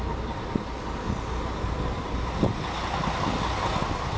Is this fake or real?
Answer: real